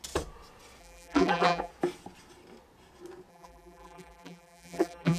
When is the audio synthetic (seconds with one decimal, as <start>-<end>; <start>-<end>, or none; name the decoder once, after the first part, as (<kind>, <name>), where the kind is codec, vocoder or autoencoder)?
0.8-1.7 (vocoder, BigVGAN v2); 3.3-5.2